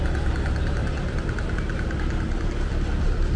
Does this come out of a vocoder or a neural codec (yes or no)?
no